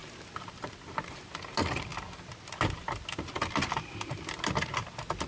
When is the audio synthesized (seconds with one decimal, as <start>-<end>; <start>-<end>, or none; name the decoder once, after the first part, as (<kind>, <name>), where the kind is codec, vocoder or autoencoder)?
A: none